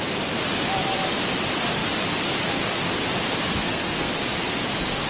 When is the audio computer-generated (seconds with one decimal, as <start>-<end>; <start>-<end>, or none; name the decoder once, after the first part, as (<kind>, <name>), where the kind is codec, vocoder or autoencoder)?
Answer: 3.5-4.1 (codec, SNAC)